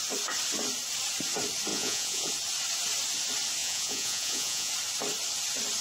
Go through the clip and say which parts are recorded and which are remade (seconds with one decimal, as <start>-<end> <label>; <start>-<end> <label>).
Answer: 0.0-1.7 recorded; 1.7-2.3 remade; 2.3-3.6 recorded; 3.6-4.7 remade; 4.7-5.8 recorded